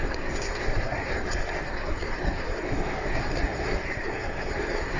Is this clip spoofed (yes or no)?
yes